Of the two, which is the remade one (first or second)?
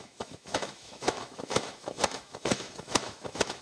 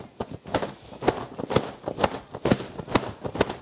first